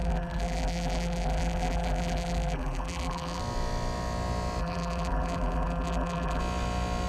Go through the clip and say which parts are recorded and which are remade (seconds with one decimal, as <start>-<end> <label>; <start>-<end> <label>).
0.0-3.4 remade; 3.4-4.6 recorded; 4.6-6.4 remade; 6.4-7.1 recorded

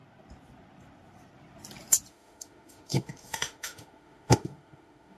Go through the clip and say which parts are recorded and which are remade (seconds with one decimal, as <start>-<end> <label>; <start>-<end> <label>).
0.0-2.1 recorded; 2.1-5.2 remade

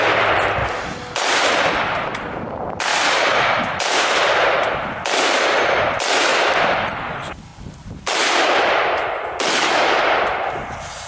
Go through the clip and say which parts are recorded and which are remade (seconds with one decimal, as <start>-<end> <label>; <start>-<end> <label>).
0.0-0.6 remade; 0.6-2.1 recorded; 2.1-6.3 remade; 6.3-7.1 recorded; 7.1-7.5 remade; 7.5-11.1 recorded

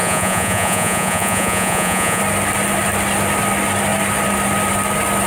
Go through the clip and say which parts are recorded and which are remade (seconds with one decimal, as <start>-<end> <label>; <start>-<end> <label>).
0.0-2.2 remade; 2.2-5.3 recorded

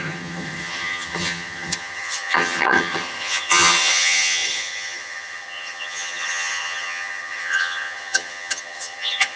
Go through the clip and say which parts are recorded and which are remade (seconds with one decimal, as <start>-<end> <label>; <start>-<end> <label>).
0.0-9.4 remade

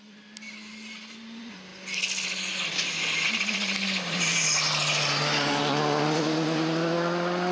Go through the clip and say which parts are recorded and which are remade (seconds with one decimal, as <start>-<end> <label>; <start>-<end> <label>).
0.0-7.5 recorded